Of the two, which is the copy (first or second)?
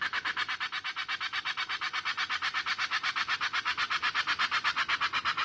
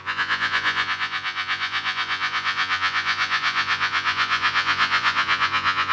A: second